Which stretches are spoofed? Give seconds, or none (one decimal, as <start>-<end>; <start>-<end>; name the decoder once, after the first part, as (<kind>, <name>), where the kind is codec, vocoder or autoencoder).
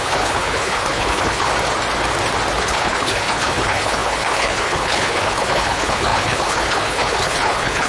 0.0-1.5 (codec, HILCodec); 2.6-7.9